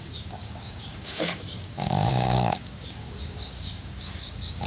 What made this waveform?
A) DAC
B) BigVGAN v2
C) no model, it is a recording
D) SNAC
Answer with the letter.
A